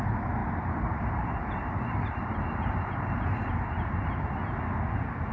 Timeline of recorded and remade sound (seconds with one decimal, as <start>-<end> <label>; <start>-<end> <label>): 0.0-0.4 recorded; 0.4-3.5 remade; 3.5-5.3 recorded